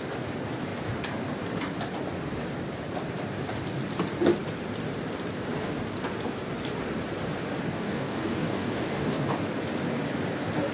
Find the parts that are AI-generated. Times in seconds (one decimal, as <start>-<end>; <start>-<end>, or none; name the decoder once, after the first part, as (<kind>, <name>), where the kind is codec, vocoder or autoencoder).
7.7-9.3 (codec, DAC)